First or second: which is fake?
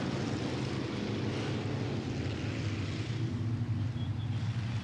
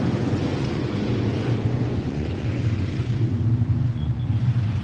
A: second